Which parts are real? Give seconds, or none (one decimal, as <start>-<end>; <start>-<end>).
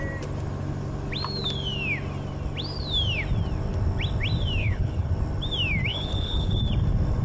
0.0-4.6; 5.1-5.9; 6.6-7.2